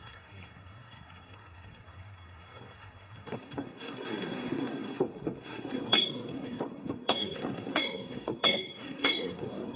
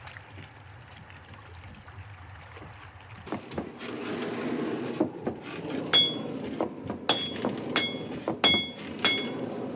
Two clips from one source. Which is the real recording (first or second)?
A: second